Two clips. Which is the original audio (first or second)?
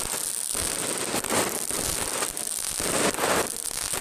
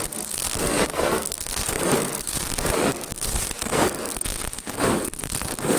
first